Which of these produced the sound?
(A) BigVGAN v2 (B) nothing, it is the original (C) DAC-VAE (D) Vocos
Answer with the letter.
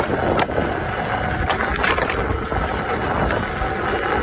B